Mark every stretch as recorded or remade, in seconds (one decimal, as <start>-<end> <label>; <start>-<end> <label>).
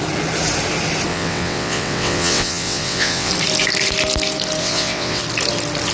0.0-1.1 recorded; 1.1-3.3 remade; 3.3-4.6 recorded; 4.6-5.2 remade; 5.2-5.9 recorded